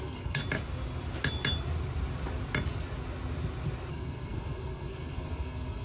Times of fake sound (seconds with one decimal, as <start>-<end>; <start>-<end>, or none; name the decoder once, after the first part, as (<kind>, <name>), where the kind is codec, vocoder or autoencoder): 0.0-0.4 (codec, SNAC); 3.9-5.8